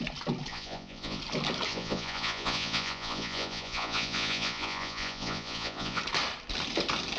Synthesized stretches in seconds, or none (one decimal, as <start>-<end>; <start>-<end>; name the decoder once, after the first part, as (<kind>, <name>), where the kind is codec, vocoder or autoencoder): 0.5-1.2 (vocoder, Vocos); 1.7-6.0